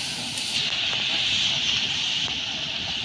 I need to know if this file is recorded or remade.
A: remade